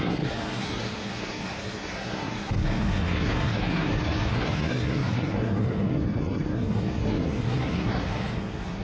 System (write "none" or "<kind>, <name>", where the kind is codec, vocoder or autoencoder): codec, SNAC